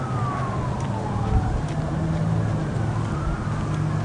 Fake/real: real